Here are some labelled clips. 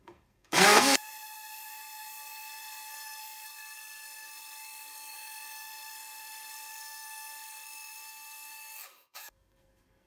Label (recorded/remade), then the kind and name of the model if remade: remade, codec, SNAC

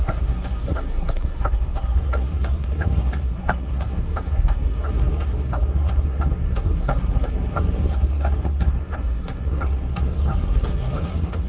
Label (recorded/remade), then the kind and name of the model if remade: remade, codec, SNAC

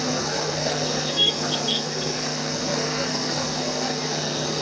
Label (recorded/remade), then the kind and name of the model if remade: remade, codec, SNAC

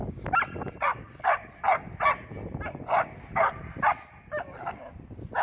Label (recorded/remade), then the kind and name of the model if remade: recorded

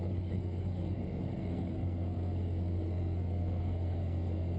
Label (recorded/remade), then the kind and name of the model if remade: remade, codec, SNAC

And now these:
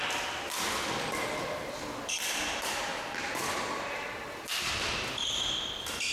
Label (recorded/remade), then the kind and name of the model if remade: recorded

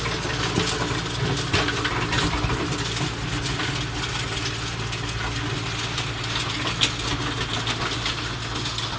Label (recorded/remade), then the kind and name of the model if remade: recorded